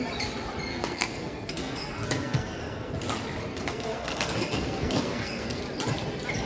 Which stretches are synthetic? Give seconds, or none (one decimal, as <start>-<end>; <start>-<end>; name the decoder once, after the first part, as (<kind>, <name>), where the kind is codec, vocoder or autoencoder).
0.7-2.9 (codec, SNAC); 3.5-5.6